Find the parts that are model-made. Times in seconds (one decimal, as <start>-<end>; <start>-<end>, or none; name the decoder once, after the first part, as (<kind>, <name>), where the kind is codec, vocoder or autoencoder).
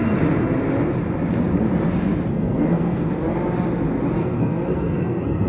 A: 2.3-3.1 (codec, SNAC); 4.2-5.5